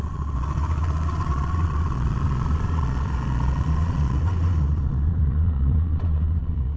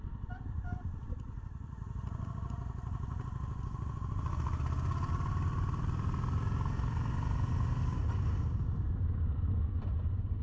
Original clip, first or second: second